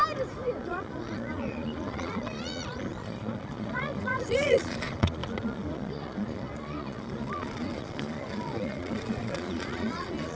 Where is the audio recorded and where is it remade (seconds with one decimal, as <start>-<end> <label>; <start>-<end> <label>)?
0.0-0.6 recorded; 0.6-10.3 remade